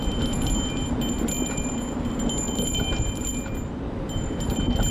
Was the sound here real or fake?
real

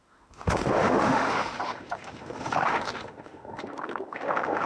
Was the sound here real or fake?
fake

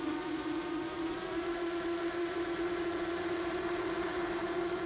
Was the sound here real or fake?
fake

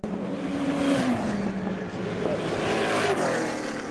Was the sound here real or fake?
real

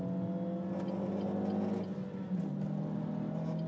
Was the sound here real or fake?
real